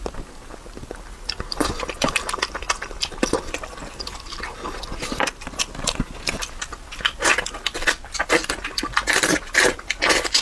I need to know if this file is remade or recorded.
recorded